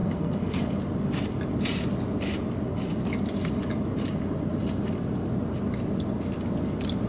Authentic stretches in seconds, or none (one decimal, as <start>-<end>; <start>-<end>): 0.6-7.1